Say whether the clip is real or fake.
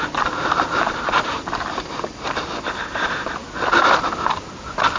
real